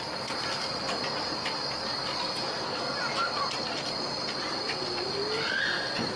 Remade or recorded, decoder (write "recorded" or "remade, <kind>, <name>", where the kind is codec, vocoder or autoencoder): recorded